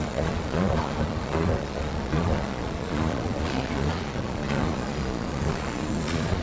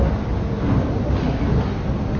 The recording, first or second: second